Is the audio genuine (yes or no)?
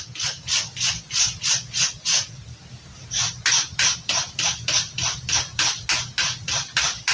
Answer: yes